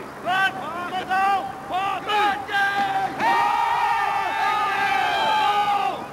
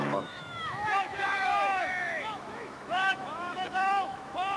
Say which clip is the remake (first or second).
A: second